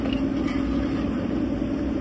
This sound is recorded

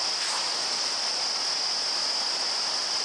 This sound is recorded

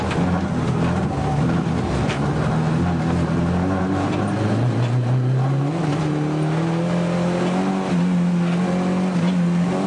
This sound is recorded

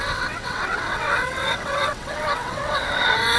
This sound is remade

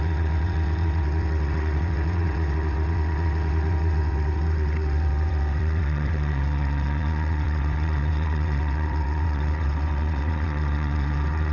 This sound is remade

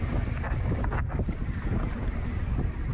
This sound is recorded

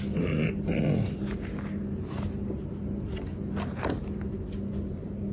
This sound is recorded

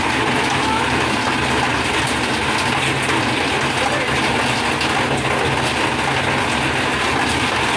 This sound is recorded